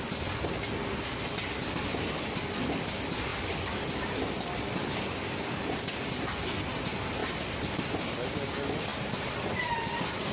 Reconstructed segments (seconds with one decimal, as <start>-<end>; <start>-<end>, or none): none